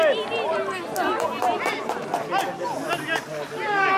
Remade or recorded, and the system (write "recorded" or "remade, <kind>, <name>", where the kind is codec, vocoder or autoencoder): recorded